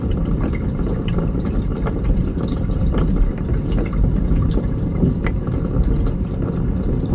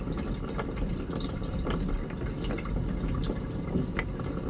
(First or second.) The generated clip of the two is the first